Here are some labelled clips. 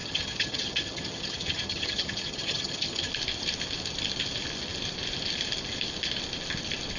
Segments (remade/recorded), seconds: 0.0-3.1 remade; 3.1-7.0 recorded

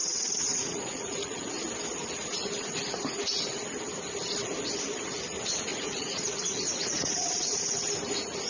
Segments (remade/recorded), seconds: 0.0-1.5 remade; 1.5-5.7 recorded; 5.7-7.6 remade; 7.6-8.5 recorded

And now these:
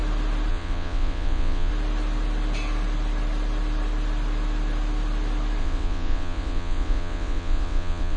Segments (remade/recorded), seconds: 0.0-0.5 recorded; 0.5-1.7 remade; 1.7-5.6 recorded; 5.6-8.2 remade

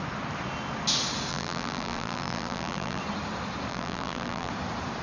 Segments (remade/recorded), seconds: 0.0-1.3 recorded; 1.3-3.0 remade; 3.0-3.7 recorded; 3.7-4.5 remade; 4.5-5.0 recorded

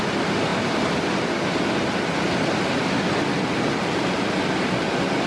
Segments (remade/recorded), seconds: 0.0-5.3 recorded

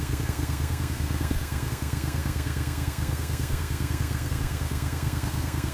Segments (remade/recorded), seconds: 0.0-5.7 remade

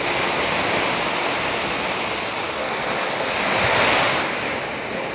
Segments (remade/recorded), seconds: 0.0-2.6 recorded; 2.6-3.1 remade; 3.1-5.1 recorded